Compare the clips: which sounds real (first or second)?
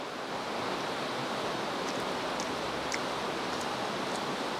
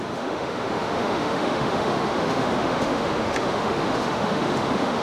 first